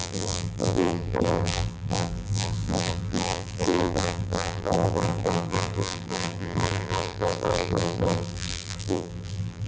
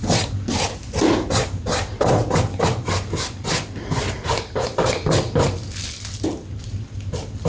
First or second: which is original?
second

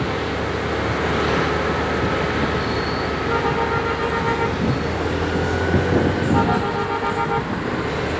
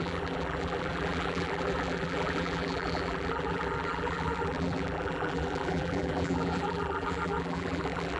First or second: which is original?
first